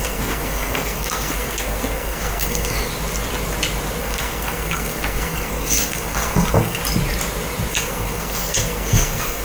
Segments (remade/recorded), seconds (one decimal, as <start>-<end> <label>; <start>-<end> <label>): 0.0-2.9 remade; 2.9-4.0 recorded; 4.0-6.8 remade; 6.8-7.7 recorded; 7.7-9.4 remade